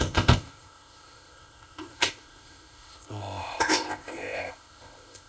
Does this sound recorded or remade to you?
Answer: remade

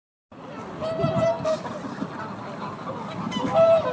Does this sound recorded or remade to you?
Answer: recorded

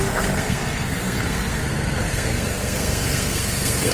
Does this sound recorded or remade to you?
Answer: remade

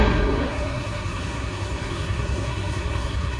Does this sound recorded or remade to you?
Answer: remade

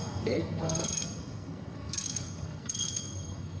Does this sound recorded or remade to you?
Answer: remade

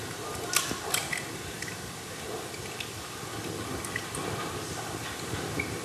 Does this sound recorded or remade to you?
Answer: recorded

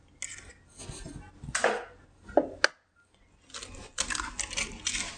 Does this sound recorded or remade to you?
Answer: recorded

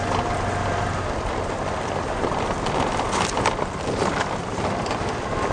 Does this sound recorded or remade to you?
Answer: recorded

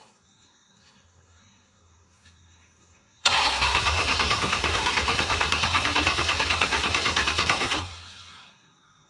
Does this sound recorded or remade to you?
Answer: remade